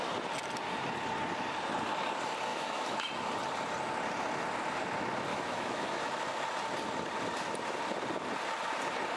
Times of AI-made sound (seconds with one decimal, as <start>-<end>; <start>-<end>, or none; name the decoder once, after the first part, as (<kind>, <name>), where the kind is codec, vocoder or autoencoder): 2.5-3.1 (autoencoder, DAC-VAE); 5.3-6.1